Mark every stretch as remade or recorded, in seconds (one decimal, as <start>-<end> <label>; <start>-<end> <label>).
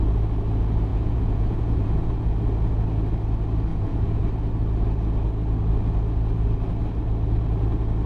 0.0-0.9 recorded; 0.9-2.3 remade; 2.3-3.7 recorded; 3.7-4.2 remade; 4.2-8.1 recorded